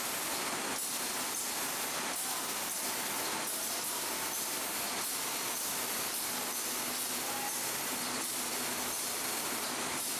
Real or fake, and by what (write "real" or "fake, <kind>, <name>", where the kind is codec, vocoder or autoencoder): real